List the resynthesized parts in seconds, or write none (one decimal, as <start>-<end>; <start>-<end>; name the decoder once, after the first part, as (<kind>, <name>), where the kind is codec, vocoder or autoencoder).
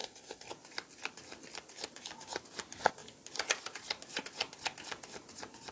0.0-0.5 (codec, SNAC)